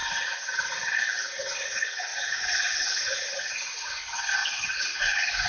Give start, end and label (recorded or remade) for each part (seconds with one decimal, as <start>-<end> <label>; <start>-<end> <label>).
0.0-0.7 remade; 0.7-2.1 recorded; 2.1-3.4 remade; 3.4-5.5 recorded